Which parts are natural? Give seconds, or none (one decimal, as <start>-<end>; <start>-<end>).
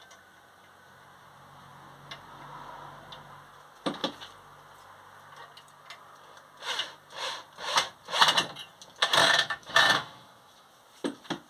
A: 0.0-9.2; 10.7-11.5